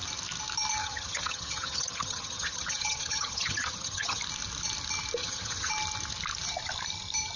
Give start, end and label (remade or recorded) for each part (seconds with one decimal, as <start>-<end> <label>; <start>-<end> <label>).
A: 0.0-0.8 recorded; 0.8-4.2 remade; 4.2-5.2 recorded; 5.2-5.7 remade; 5.7-7.4 recorded